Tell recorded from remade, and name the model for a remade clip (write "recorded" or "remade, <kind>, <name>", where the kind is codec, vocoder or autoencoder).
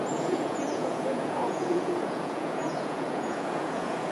remade, vocoder, Vocos